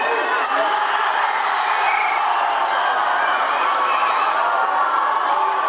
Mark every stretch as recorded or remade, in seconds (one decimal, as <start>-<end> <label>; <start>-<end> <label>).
0.0-5.7 recorded